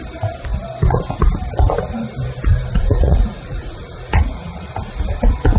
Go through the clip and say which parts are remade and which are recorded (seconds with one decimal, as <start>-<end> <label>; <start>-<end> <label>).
0.0-2.7 recorded; 2.7-4.7 remade; 4.7-5.6 recorded